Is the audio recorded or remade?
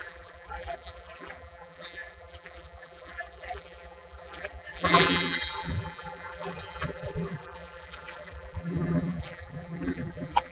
remade